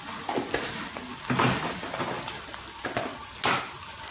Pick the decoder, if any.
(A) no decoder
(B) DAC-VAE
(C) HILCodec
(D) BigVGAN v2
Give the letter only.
A